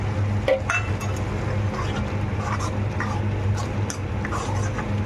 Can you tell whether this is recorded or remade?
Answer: recorded